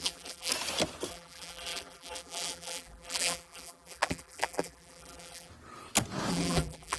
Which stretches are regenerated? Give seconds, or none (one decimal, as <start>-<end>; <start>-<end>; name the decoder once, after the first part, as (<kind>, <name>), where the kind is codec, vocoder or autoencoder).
0.0-0.5 (vocoder, BigVGAN v2); 1.1-5.5; 6.3-7.0